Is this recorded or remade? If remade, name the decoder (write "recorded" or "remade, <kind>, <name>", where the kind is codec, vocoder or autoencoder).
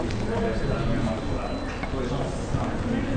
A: recorded